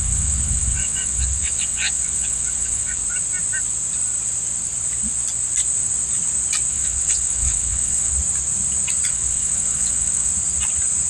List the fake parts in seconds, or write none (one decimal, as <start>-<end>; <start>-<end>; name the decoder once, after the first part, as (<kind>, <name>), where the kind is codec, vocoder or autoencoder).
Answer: 0.0-3.0 (vocoder, WaveNeXt); 6.7-8.1; 9.1-10.3